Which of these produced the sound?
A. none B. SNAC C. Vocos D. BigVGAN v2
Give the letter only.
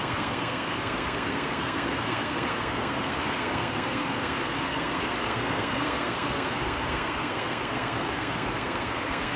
B